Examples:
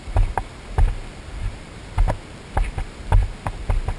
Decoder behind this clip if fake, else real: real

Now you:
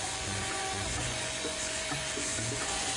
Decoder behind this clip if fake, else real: fake, vocoder, Vocos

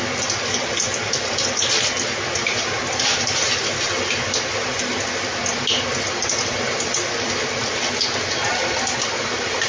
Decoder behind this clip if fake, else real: real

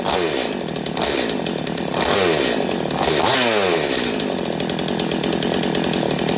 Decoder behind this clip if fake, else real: real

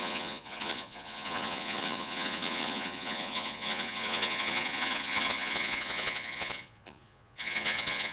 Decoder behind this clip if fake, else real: fake, vocoder, Vocos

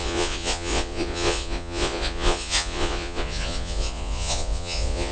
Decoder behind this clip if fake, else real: fake, vocoder, Vocos